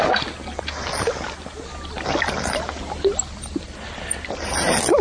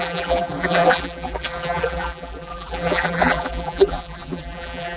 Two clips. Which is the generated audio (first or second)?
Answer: second